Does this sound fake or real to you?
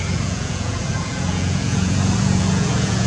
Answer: fake